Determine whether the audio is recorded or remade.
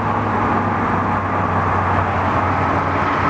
recorded